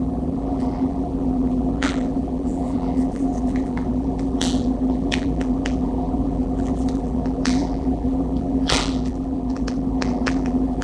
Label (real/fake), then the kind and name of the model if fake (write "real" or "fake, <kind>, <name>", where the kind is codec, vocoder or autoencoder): fake, vocoder, BigVGAN v2